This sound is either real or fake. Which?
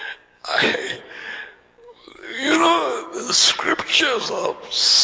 fake